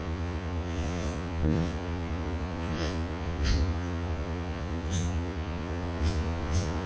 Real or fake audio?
fake